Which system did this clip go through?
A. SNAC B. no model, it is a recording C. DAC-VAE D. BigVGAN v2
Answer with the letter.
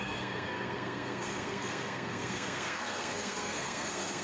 A